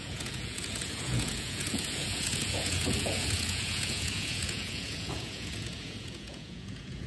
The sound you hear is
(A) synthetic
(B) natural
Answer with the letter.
A